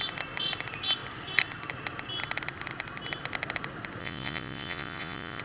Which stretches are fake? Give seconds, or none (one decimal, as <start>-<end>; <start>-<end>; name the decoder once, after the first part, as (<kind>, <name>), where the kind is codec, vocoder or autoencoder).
4.0-5.4 (vocoder, Vocos)